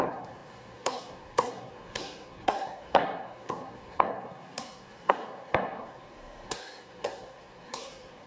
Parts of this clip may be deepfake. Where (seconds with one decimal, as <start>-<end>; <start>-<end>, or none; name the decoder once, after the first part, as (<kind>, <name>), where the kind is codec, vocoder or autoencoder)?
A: 0.0-8.3 (codec, SNAC)